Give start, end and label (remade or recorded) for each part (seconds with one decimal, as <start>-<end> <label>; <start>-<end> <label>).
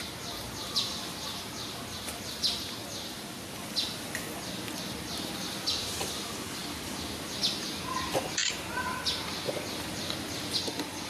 0.0-11.1 recorded